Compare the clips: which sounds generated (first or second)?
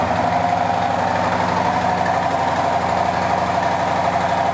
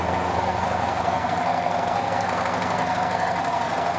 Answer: second